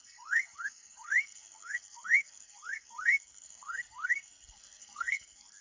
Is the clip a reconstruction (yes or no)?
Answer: yes